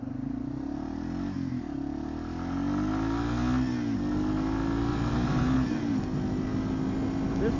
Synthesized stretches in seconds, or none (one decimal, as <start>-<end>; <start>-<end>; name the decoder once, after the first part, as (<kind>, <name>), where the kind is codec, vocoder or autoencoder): 4.9-6.0 (vocoder, BigVGAN v2)